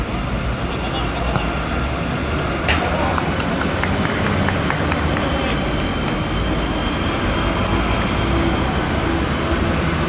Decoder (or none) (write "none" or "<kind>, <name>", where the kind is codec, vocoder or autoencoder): none